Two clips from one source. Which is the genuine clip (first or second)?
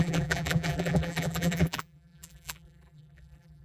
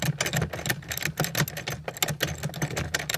second